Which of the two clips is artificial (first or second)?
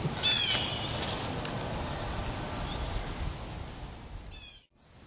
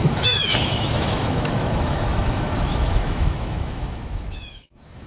second